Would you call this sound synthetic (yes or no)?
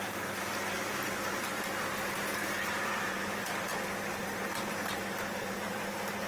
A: yes